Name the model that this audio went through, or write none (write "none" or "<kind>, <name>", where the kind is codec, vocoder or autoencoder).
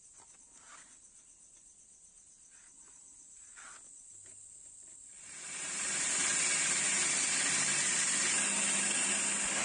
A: none